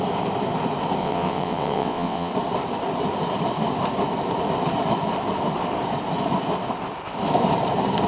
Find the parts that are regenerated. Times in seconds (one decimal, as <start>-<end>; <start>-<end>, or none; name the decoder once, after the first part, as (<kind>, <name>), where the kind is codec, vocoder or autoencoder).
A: 1.0-2.3 (vocoder, WaveNeXt)